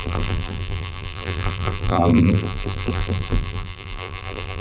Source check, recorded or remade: remade